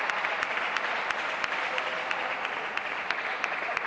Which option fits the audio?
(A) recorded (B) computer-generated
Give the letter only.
A